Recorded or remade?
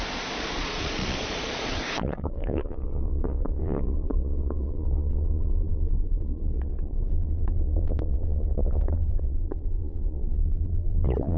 remade